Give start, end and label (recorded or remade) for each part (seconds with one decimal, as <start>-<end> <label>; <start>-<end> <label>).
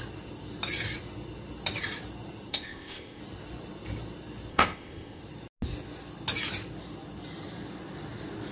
0.0-2.5 recorded; 2.5-3.2 remade; 3.2-4.5 recorded; 4.5-5.2 remade; 5.2-8.5 recorded